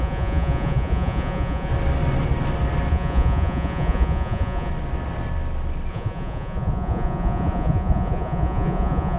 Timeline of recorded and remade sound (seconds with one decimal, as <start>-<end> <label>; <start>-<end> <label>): 0.0-1.7 remade; 1.7-2.9 recorded; 2.9-4.7 remade; 4.7-5.9 recorded; 5.9-9.2 remade